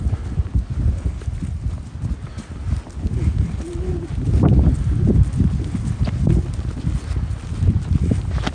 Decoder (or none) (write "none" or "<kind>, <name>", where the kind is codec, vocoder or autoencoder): none